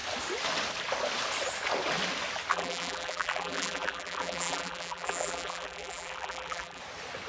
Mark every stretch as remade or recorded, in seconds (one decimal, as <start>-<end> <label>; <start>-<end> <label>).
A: 0.0-2.5 recorded; 2.5-6.8 remade; 6.8-7.3 recorded